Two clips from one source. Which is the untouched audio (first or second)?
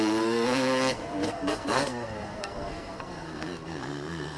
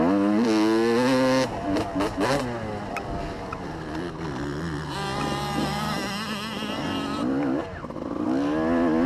second